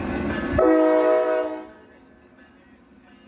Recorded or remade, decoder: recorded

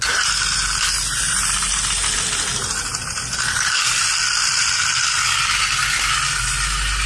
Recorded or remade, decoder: recorded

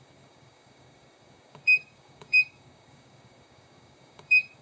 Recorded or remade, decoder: remade, codec, DAC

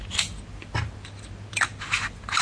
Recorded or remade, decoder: recorded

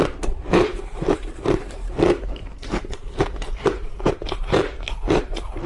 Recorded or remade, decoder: remade, vocoder, BigVGAN v2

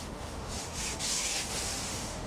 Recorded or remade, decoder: remade, autoencoder, DAC-VAE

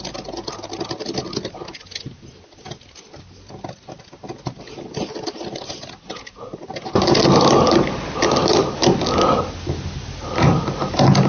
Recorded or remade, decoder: recorded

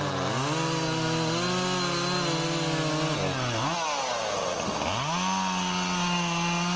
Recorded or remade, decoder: recorded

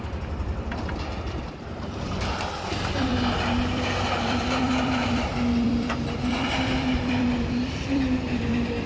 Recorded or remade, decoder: remade, vocoder, BigVGAN v2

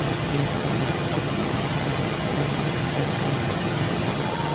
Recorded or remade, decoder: remade, vocoder, HiFi-GAN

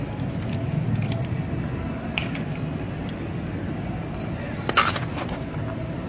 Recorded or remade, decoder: recorded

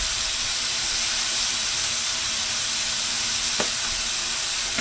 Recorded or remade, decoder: remade, vocoder, BigVGAN v2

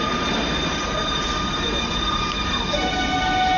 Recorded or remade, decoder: recorded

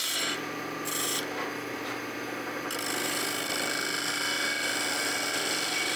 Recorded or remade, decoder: recorded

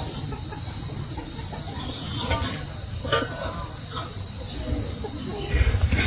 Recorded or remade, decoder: recorded